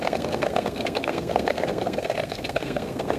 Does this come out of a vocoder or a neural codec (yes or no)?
yes